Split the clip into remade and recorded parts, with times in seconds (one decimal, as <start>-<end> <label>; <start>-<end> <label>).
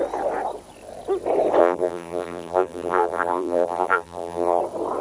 0.0-1.6 recorded; 1.6-4.6 remade; 4.6-5.0 recorded